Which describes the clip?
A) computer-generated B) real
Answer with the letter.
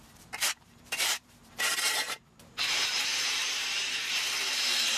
A